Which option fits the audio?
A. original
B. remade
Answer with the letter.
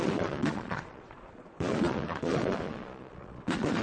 B